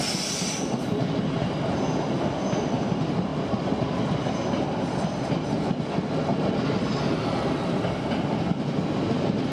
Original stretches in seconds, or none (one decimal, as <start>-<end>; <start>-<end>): 0.0-9.5